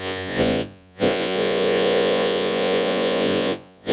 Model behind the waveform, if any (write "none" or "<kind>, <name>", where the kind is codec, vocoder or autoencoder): vocoder, Vocos